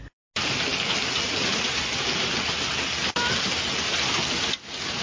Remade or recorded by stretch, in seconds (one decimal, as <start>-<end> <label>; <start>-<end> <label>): 0.0-5.0 recorded